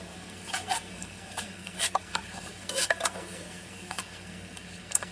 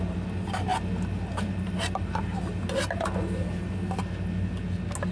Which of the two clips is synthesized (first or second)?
first